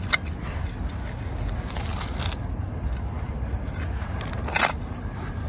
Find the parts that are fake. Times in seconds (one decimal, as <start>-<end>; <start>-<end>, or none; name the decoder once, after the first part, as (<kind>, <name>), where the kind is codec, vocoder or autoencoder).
none